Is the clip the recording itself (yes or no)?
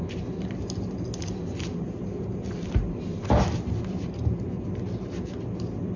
yes